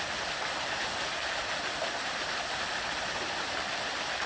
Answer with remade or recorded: recorded